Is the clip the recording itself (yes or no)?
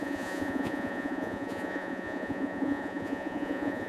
no